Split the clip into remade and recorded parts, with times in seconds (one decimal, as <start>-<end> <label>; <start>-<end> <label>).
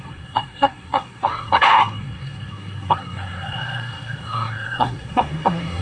0.0-5.8 remade